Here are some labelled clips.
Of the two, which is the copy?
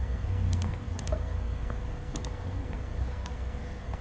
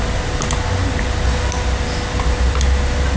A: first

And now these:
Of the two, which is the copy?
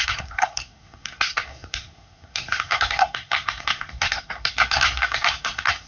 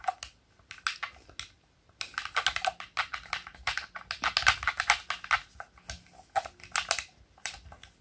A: first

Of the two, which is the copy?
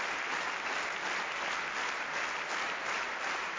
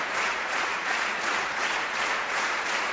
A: second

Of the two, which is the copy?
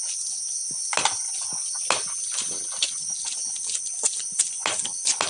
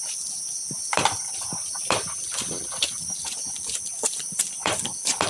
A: second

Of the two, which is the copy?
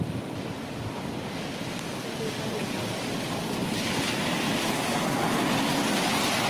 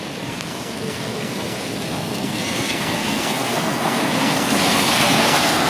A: second